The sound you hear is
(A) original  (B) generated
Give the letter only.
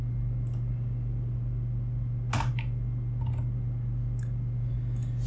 A